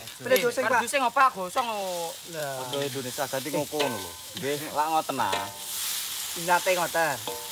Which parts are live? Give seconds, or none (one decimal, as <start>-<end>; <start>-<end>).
0.0-2.4; 5.1-7.5